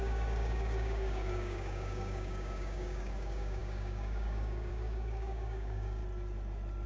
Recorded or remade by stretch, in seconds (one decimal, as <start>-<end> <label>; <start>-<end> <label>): 0.0-6.0 remade; 6.0-6.9 recorded